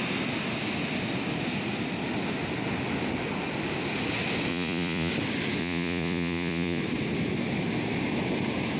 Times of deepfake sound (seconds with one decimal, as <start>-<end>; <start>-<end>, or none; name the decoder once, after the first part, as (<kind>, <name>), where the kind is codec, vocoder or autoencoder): 4.5-5.1 (vocoder, Vocos); 5.6-6.8